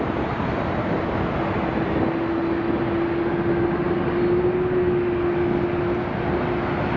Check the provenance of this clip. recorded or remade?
recorded